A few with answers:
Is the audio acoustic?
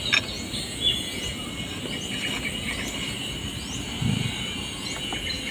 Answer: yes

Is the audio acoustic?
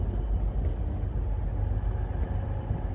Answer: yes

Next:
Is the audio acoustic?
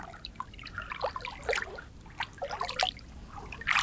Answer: yes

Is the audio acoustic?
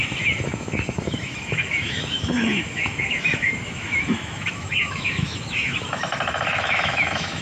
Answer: no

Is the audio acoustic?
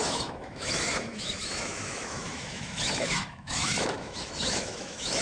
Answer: no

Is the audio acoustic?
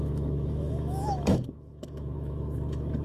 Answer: no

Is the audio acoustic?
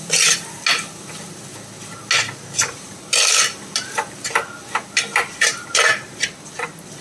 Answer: yes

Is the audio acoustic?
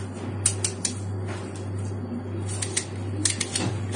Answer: yes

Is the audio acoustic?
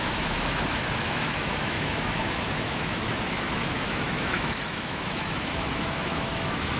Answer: no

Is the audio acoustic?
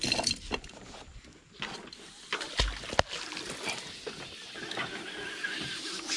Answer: yes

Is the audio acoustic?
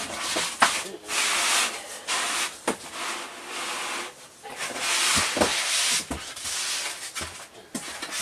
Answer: yes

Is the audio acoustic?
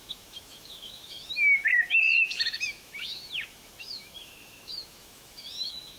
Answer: no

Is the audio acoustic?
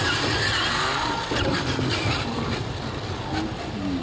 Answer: yes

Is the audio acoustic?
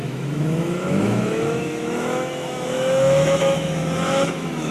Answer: no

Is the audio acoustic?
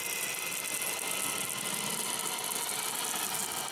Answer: yes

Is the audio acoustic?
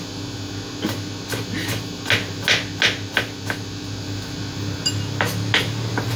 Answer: yes